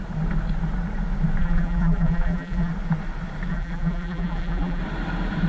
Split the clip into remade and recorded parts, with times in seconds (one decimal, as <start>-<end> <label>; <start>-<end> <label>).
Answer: 0.0-1.4 recorded; 1.4-2.7 remade; 2.7-3.5 recorded; 3.5-4.8 remade; 4.8-5.5 recorded